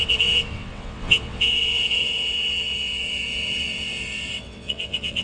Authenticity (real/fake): fake